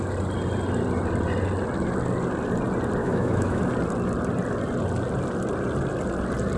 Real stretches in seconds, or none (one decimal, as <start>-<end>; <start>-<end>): 0.0-3.0; 3.6-6.6